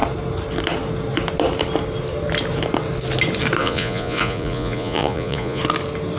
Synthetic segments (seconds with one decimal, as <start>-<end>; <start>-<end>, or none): 3.6-5.6